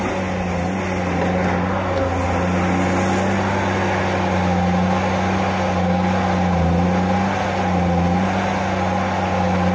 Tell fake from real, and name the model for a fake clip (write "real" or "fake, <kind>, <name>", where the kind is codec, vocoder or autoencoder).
real